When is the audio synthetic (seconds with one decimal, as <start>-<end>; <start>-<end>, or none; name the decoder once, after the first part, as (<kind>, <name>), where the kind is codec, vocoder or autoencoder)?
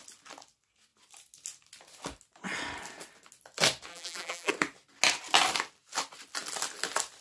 3.9-4.5 (vocoder, BigVGAN v2)